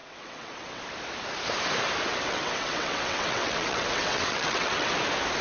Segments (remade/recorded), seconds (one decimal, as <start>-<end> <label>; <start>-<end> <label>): 0.0-0.8 remade; 0.8-2.1 recorded; 2.1-4.9 remade; 4.9-5.4 recorded